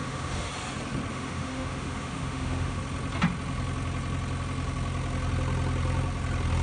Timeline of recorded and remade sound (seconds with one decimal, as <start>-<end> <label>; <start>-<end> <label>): 0.0-0.5 remade; 0.5-1.1 recorded; 1.1-2.8 remade; 2.8-6.6 recorded